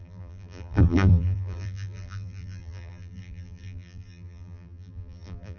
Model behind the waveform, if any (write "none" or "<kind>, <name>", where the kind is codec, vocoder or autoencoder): vocoder, BigVGAN v2